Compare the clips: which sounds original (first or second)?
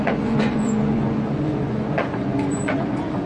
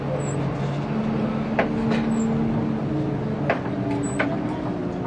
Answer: second